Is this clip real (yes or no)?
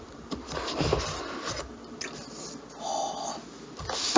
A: yes